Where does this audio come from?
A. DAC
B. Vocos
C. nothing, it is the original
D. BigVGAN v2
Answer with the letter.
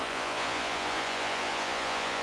B